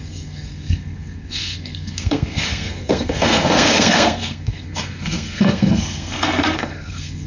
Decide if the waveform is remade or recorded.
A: remade